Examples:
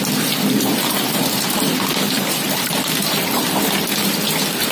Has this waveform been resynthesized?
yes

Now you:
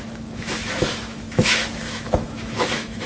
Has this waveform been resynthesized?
yes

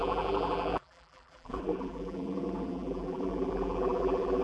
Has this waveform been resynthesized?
yes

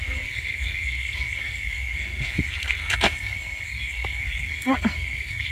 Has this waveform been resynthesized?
yes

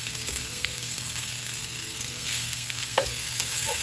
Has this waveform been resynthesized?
yes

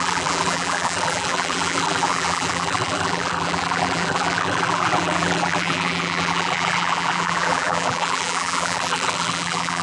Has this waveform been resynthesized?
yes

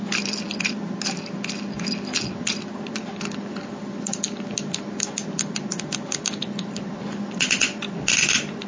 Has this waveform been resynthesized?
no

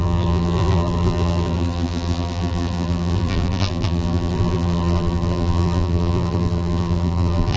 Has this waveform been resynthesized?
yes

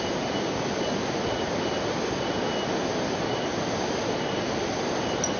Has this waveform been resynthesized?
no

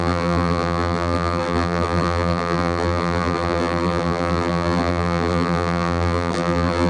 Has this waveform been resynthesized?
yes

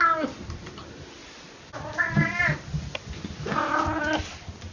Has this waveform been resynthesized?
no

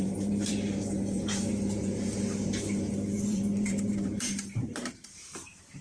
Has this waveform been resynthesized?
yes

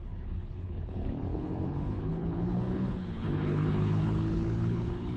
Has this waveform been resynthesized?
yes